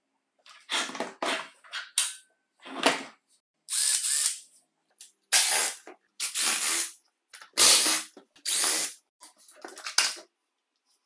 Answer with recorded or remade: recorded